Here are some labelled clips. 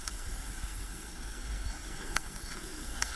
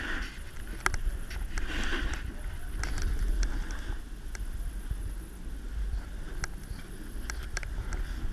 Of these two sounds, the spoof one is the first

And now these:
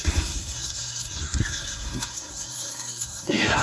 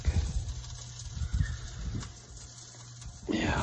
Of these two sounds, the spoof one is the first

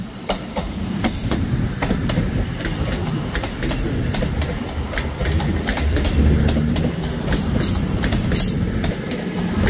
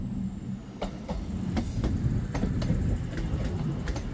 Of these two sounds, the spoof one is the first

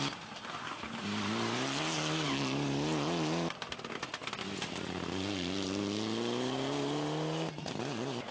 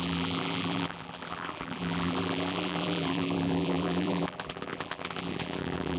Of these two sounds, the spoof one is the second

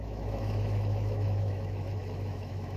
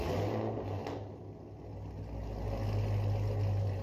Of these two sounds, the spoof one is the first